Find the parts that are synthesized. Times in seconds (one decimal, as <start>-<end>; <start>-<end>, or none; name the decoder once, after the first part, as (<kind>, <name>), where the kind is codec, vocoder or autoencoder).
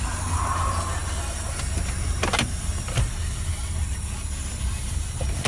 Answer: none